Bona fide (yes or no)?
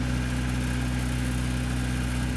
yes